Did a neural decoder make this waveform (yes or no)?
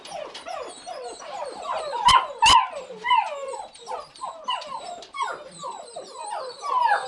yes